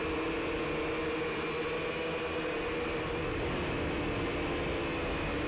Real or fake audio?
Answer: real